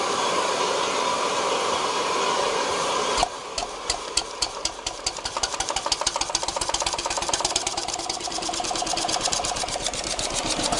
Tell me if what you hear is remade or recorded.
remade